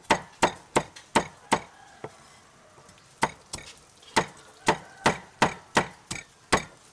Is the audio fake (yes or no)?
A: no